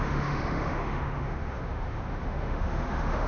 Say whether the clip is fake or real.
fake